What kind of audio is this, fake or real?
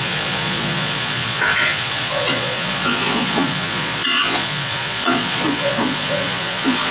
fake